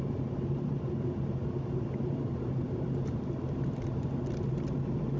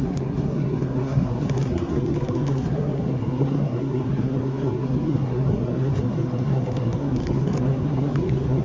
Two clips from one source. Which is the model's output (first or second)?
second